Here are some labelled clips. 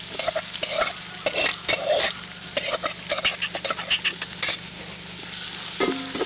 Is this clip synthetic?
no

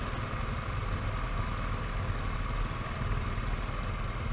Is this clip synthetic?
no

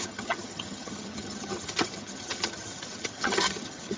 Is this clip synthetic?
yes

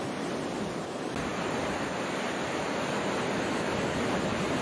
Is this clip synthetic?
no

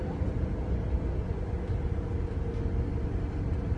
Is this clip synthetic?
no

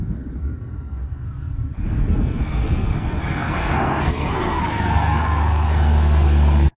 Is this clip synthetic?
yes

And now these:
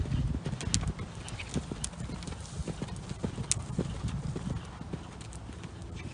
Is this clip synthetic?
no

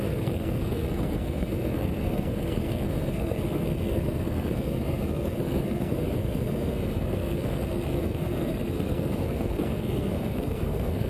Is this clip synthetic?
yes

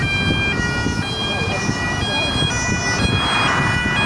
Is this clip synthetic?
no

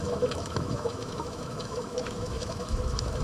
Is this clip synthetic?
yes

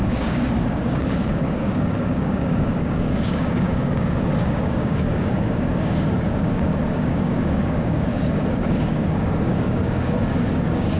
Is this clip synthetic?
yes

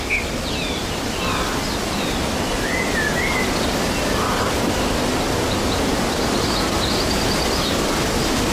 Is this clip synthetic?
no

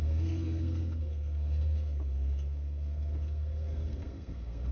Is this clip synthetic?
yes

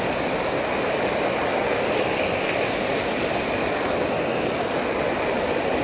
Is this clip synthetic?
no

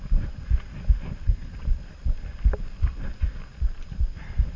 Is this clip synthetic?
no